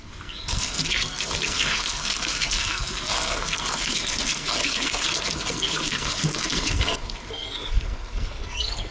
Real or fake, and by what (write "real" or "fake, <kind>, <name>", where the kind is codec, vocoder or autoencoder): fake, codec, SNAC